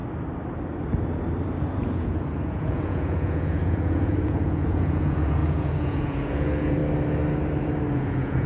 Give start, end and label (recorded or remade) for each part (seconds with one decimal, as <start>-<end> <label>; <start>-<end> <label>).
0.0-1.8 recorded; 1.8-6.8 remade; 6.8-8.0 recorded; 8.0-8.5 remade